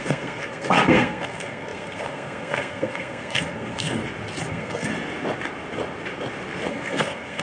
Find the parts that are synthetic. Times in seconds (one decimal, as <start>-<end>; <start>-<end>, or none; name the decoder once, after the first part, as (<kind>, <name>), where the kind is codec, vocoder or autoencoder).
0.0-4.0 (codec, SNAC); 4.5-4.9; 6.7-7.4

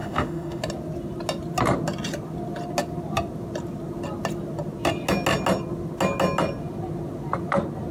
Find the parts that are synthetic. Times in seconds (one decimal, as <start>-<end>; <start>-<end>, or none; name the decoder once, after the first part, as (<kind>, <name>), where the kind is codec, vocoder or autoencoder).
0.0-0.6 (autoencoder, DAC-VAE)